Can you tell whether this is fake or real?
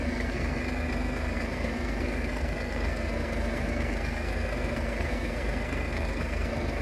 fake